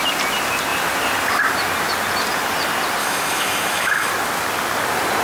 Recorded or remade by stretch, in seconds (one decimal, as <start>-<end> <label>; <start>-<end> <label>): 0.0-3.0 recorded; 3.0-4.1 remade; 4.1-5.2 recorded